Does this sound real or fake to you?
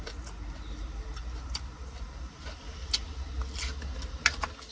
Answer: real